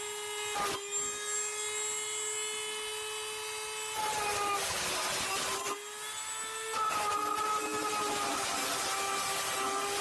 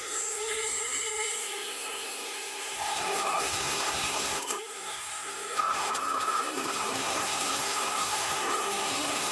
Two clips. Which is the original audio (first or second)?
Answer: first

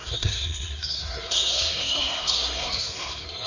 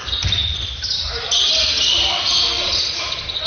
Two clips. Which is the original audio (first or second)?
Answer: second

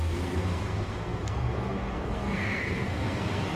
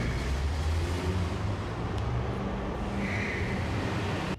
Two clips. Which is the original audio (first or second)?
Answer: second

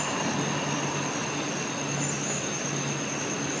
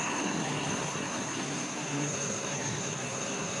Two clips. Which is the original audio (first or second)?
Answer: first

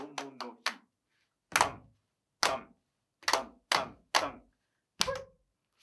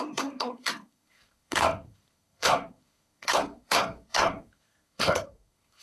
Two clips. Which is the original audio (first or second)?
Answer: first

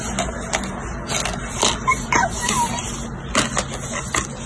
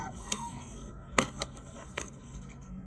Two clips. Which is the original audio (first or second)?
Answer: first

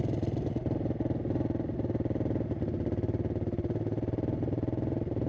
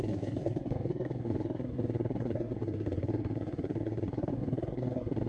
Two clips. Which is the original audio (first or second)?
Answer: first